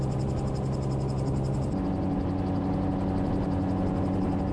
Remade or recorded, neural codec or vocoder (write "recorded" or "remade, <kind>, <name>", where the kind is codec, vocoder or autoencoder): recorded